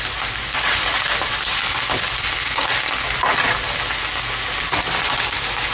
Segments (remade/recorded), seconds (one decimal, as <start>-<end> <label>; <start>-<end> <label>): 0.0-1.6 remade; 1.6-5.0 recorded; 5.0-5.7 remade